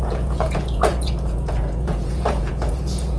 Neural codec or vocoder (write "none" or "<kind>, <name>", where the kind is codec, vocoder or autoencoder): vocoder, Vocos